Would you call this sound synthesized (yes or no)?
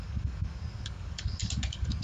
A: yes